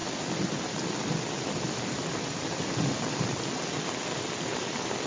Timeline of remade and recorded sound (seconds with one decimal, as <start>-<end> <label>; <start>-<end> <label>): 0.0-5.1 recorded